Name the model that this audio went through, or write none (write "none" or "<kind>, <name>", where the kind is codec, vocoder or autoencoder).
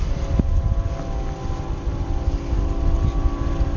none